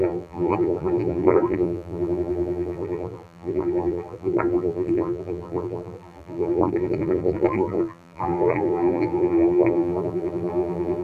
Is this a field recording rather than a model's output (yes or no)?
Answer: no